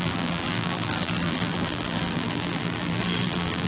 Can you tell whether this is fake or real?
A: fake